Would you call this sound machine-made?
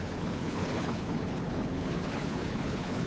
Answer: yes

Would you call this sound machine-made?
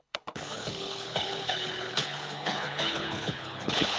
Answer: yes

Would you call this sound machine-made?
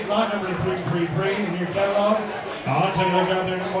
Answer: no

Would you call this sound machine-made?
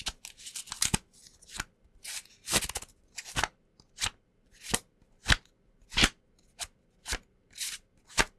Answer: no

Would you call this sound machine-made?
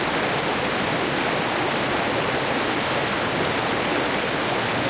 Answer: no